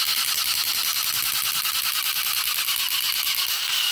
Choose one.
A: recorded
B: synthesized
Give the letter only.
A